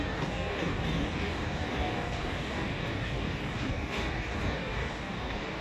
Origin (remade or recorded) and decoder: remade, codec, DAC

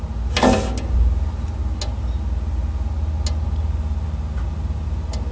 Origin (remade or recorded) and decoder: recorded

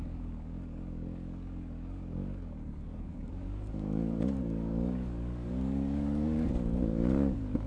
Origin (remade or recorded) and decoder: remade, codec, DAC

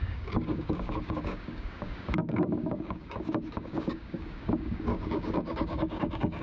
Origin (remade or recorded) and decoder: remade, codec, DAC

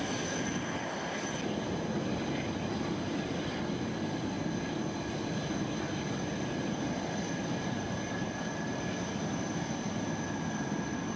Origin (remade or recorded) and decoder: recorded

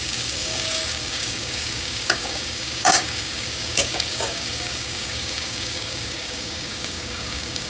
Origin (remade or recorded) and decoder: remade, codec, DAC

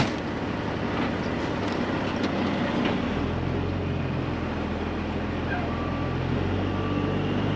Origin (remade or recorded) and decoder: recorded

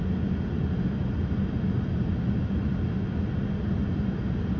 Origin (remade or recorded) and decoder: recorded